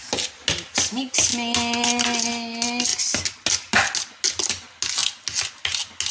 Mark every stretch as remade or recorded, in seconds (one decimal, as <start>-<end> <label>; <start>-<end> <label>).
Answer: 0.0-6.1 recorded